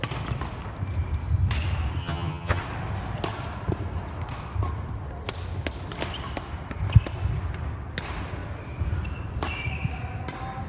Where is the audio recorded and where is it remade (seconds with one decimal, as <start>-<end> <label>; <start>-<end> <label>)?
0.0-2.0 recorded; 2.0-2.6 remade; 2.6-10.7 recorded